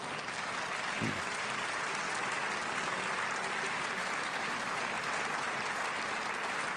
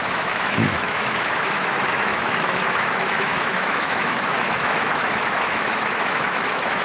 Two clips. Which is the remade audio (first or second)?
second